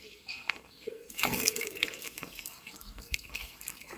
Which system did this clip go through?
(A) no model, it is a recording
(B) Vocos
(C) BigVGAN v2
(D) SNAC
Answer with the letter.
D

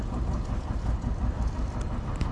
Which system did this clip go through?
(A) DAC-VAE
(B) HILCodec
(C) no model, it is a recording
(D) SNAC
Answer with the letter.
C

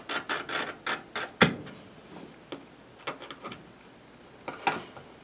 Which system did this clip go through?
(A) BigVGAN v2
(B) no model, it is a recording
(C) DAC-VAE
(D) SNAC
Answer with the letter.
B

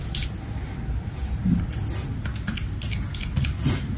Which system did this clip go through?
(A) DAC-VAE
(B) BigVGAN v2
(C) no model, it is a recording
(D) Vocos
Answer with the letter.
C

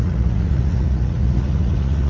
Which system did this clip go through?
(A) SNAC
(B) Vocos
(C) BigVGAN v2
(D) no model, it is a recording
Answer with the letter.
B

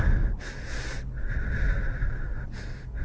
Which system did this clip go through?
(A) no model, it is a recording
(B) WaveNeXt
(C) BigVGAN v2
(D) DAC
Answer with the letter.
A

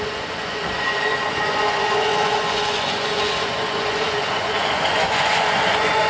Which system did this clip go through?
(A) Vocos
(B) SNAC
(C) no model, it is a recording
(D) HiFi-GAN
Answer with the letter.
A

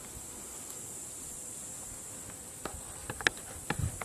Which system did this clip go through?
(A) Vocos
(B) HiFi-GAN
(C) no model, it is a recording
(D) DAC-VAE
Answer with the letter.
C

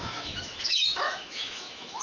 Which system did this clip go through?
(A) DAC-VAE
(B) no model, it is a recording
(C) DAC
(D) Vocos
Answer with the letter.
A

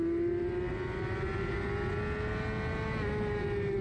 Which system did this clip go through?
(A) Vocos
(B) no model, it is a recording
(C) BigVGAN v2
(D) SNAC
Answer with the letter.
B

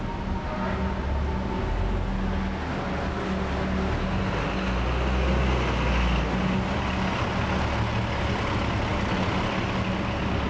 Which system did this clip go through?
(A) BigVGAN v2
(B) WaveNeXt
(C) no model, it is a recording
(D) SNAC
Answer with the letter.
C